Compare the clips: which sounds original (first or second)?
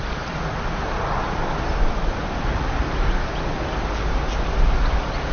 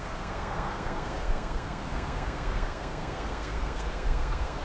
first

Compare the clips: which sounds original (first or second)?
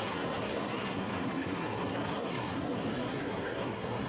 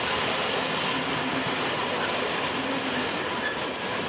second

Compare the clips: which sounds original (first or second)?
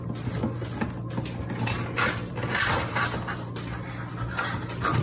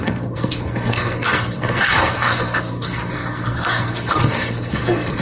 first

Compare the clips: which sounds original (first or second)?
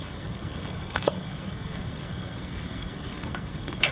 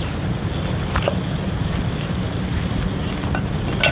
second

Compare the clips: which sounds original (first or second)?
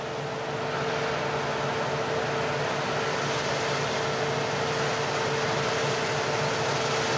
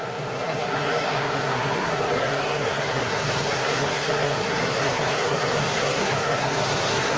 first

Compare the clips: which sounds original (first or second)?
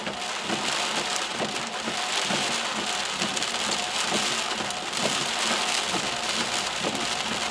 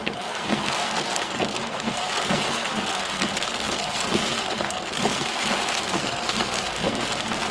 first